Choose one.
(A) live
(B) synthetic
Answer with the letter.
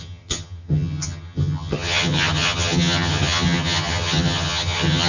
B